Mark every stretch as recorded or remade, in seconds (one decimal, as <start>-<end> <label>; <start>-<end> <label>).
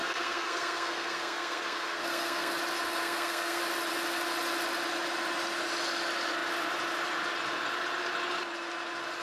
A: 0.0-2.6 remade; 2.6-3.0 recorded; 3.0-3.6 remade; 3.6-9.2 recorded